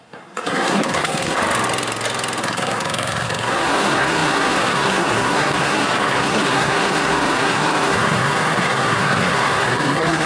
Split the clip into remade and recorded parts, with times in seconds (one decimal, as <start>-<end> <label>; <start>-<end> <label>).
0.0-1.4 remade; 1.4-2.4 recorded; 2.4-10.3 remade